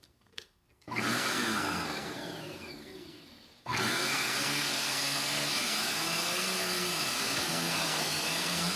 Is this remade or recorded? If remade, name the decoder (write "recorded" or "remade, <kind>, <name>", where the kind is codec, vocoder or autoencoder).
remade, codec, SNAC